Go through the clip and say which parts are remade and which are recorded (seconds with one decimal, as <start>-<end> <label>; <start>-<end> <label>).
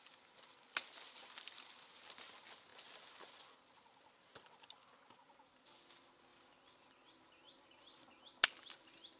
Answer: 0.0-2.7 recorded; 2.7-3.4 remade; 3.4-9.2 recorded